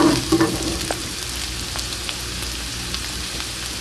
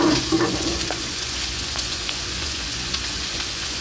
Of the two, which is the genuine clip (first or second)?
first